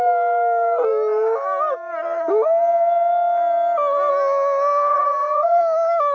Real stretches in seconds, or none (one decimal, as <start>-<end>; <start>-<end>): 0.0-4.9; 5.6-6.1